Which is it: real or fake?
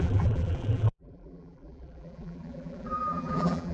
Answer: fake